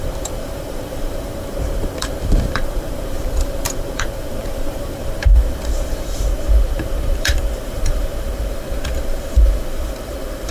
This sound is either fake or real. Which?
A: fake